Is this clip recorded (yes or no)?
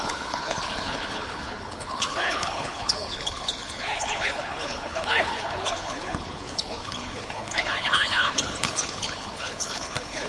no